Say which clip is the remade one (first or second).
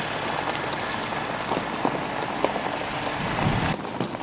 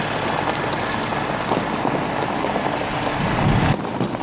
first